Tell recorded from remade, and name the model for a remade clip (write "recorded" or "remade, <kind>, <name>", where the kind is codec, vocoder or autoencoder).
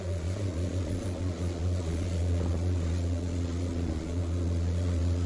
remade, vocoder, Vocos